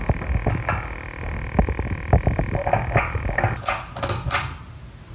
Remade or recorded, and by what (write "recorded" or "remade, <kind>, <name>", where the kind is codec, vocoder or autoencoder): recorded